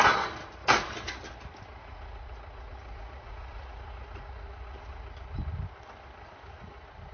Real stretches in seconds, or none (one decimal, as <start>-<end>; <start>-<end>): 0.0-1.8; 4.8-7.1